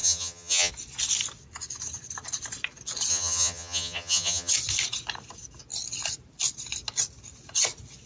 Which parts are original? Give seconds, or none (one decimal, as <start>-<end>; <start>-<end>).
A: 0.7-3.1; 4.5-8.1